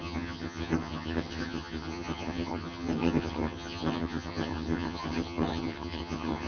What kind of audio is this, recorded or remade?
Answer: remade